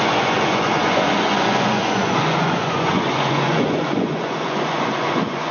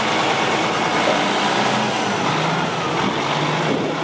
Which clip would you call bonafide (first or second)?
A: second